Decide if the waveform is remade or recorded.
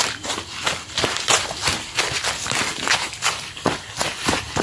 recorded